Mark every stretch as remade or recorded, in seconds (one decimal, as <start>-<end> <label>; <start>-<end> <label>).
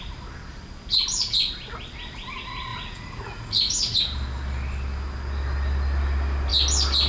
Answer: 0.0-2.7 recorded; 2.7-4.0 remade; 4.0-7.1 recorded